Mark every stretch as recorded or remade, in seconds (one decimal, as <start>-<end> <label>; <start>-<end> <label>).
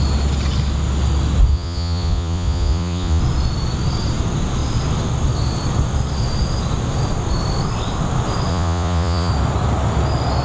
0.0-1.5 recorded; 1.5-3.2 remade; 3.2-8.5 recorded; 8.5-9.3 remade; 9.3-10.4 recorded